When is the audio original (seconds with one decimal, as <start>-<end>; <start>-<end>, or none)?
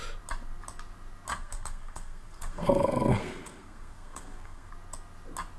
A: 0.0-1.3; 4.7-5.6